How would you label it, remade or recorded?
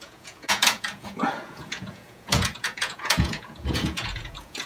remade